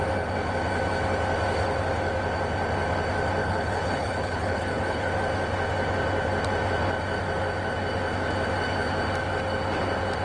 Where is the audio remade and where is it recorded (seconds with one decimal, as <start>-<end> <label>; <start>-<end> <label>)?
0.0-3.4 recorded; 3.4-5.1 remade; 5.1-10.2 recorded